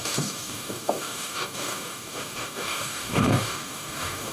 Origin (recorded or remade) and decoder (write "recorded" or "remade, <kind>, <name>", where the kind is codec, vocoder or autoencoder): remade, codec, DAC